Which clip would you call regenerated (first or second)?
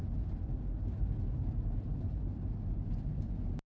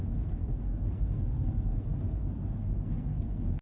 second